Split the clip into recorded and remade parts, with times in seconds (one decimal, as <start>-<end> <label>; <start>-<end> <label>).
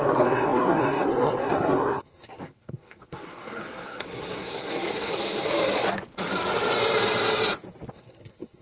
0.0-5.1 remade; 5.1-7.9 recorded; 7.9-8.6 remade